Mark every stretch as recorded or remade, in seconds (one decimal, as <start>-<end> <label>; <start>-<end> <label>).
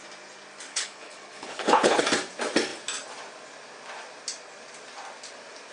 0.0-0.7 recorded; 0.7-2.0 remade; 2.0-5.7 recorded